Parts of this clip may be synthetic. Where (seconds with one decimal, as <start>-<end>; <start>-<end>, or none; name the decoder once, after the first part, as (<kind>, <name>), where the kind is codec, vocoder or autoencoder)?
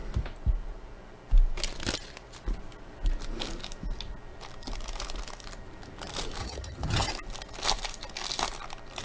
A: 6.4-7.1 (vocoder, HiFi-GAN)